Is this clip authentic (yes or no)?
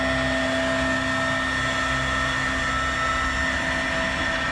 yes